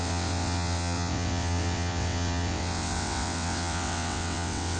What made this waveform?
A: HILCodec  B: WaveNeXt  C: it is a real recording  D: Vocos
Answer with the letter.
B